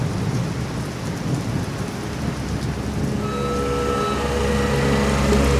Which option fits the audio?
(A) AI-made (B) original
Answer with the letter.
B